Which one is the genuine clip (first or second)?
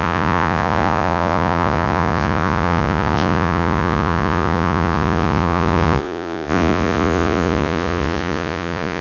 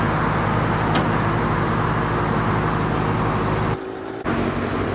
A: second